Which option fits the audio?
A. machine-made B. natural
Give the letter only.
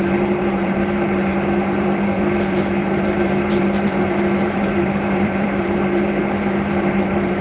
A